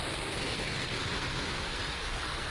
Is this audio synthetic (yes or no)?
yes